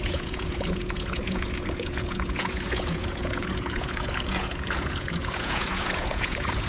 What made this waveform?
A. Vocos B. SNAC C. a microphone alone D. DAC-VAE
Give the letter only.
A